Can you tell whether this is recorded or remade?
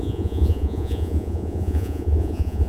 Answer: remade